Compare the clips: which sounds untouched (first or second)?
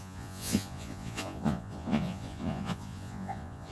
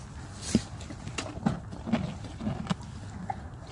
second